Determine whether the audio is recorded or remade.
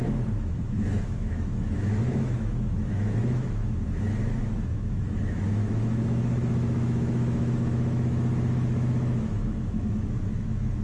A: remade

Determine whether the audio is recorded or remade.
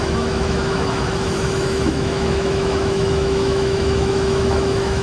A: remade